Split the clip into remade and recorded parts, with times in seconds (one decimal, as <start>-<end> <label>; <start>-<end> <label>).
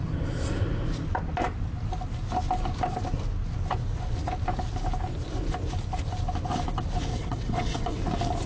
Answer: 0.0-7.1 recorded; 7.1-8.0 remade; 8.0-8.5 recorded